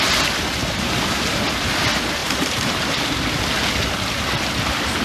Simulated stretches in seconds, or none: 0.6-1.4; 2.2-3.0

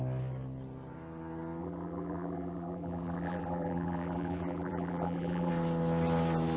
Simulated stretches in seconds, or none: 1.6-5.5